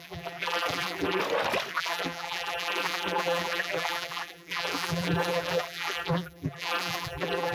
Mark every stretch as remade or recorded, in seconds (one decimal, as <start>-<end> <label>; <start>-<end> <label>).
0.0-1.2 remade; 1.2-1.7 recorded; 1.7-7.5 remade

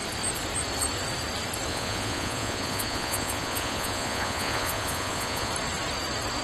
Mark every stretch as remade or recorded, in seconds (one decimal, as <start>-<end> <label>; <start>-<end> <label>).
0.0-1.7 recorded; 1.7-5.5 remade; 5.5-6.4 recorded

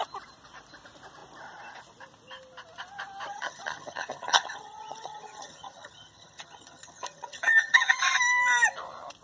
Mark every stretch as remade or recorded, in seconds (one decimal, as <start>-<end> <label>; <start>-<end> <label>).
0.0-3.3 recorded; 3.3-8.0 remade; 8.0-9.2 recorded

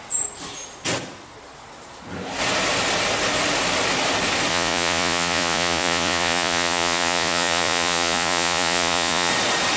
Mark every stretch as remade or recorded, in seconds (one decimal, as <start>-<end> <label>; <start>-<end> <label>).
0.0-4.5 recorded; 4.5-9.3 remade; 9.3-9.8 recorded

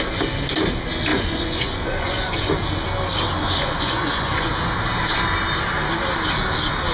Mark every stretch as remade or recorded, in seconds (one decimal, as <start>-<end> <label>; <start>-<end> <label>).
0.0-1.1 recorded; 1.1-2.5 remade; 2.5-3.4 recorded; 3.4-4.5 remade; 4.5-6.9 recorded

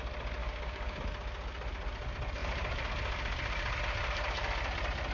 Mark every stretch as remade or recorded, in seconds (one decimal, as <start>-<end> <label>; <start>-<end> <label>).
0.0-0.4 recorded; 0.4-1.0 remade; 1.0-5.1 recorded

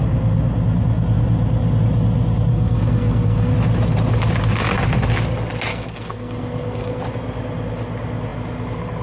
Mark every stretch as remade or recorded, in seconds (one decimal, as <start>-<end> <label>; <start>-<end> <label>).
0.0-2.5 recorded; 2.5-3.5 remade; 3.5-5.7 recorded; 5.7-7.0 remade; 7.0-9.0 recorded